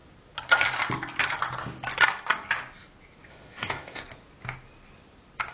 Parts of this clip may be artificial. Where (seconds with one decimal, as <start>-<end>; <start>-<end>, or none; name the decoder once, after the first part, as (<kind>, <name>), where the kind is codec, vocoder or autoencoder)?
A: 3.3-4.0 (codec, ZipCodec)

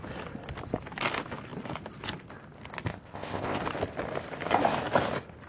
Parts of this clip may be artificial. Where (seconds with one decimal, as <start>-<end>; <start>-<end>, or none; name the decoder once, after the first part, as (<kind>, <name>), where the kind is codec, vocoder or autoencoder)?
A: 2.9-3.6 (codec, ZipCodec)

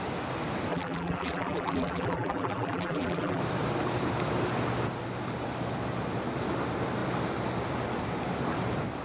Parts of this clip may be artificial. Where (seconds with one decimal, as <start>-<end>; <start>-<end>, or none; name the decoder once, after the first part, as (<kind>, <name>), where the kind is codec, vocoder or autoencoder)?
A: 0.7-3.4 (vocoder, BigVGAN v2)

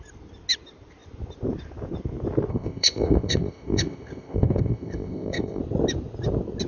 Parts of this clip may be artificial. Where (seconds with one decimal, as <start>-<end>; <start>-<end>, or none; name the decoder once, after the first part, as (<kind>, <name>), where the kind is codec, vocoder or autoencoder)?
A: 2.5-5.6 (codec, ZipCodec)

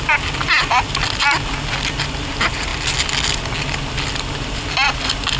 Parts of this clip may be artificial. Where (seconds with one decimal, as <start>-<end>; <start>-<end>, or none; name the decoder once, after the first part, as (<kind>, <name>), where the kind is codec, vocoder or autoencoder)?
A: none

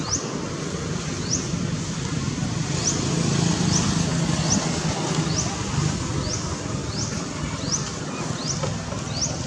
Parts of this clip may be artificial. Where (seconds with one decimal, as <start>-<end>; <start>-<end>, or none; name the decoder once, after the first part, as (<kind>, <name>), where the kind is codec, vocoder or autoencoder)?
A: none

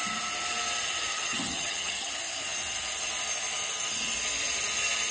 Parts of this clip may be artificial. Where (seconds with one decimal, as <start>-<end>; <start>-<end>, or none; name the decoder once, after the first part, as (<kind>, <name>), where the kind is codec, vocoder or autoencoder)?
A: 1.1-2.1 (vocoder, HiFi-GAN)